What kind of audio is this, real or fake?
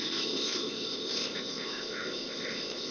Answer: fake